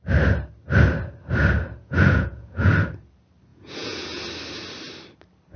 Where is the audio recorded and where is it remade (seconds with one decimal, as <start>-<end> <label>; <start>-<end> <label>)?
0.0-1.8 recorded; 1.8-2.7 remade; 2.7-3.5 recorded; 3.5-4.2 remade; 4.2-5.6 recorded